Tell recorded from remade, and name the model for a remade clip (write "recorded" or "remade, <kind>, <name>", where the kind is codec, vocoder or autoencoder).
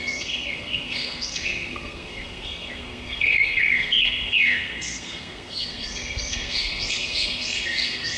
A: remade, codec, SNAC